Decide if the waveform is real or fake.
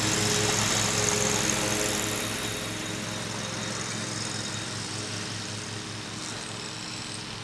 real